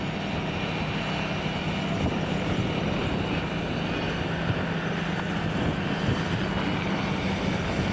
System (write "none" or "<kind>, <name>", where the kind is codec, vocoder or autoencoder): none